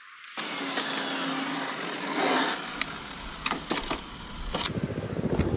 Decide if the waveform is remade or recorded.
recorded